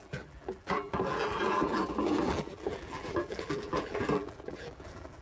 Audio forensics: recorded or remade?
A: remade